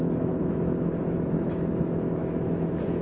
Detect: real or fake fake